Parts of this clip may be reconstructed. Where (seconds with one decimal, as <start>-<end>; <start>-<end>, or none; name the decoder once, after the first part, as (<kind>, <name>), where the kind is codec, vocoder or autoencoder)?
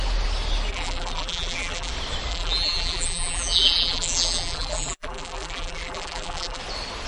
0.7-1.9 (vocoder, BigVGAN v2); 2.3-6.6